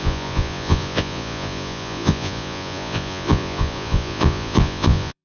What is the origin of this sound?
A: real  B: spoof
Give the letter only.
B